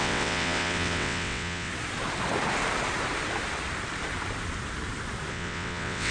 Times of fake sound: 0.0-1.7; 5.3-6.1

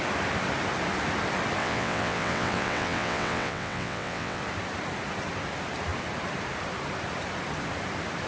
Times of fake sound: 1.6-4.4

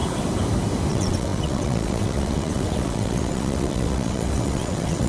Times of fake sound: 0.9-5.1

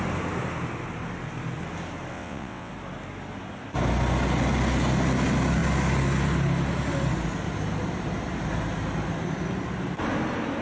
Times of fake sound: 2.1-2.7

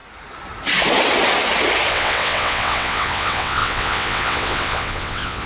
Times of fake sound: 1.9-5.5